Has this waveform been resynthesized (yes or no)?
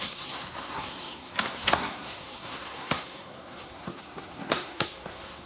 yes